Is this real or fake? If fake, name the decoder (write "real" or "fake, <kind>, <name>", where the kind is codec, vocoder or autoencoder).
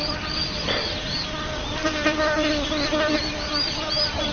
real